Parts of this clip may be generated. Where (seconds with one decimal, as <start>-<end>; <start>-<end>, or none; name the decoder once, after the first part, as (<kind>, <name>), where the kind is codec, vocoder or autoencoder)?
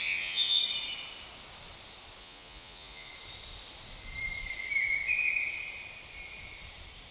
0.0-0.6 (vocoder, Vocos); 2.2-3.1